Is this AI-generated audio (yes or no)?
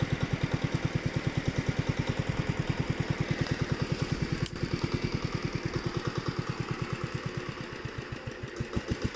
no